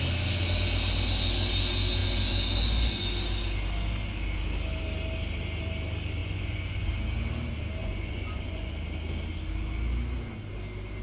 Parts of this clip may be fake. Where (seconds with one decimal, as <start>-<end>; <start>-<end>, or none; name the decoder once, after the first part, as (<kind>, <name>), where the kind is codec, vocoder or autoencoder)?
6.2-6.9 (vocoder, Vocos); 7.8-8.7

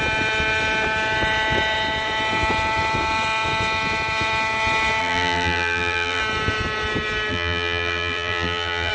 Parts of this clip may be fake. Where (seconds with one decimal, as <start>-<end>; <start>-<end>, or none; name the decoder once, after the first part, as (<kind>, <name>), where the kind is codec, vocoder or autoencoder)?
5.0-6.2 (vocoder, BigVGAN v2); 7.3-8.9

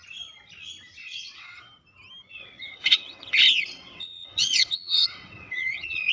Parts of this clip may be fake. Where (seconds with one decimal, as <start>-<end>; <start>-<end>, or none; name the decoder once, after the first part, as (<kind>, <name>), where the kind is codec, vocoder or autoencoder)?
1.0-1.6 (vocoder, WaveNeXt); 2.3-6.1